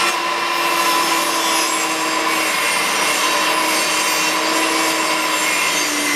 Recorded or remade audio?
recorded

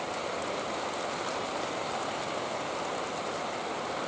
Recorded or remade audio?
recorded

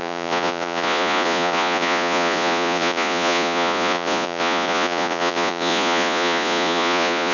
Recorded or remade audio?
remade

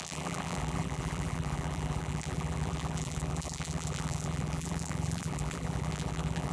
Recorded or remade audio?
remade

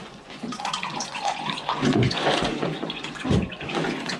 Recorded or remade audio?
remade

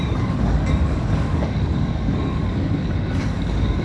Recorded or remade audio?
remade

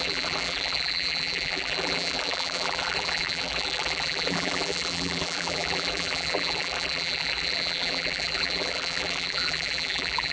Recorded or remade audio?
remade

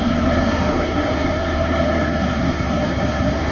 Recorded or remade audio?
remade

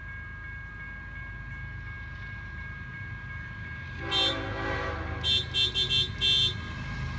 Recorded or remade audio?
recorded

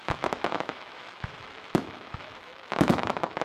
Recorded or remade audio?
remade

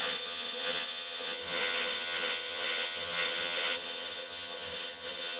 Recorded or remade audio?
remade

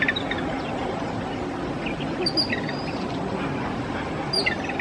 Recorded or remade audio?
recorded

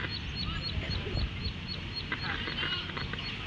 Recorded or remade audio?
recorded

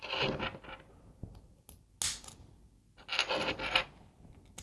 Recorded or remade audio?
recorded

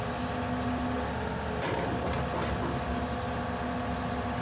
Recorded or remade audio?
recorded